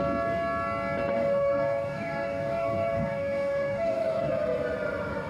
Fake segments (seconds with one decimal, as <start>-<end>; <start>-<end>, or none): 1.1-4.3